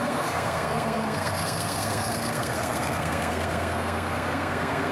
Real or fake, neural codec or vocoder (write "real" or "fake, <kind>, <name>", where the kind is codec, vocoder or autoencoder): fake, codec, SNAC